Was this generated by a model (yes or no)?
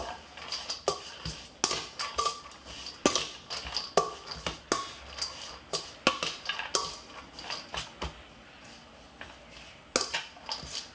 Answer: no